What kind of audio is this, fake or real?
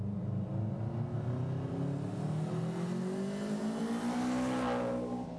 real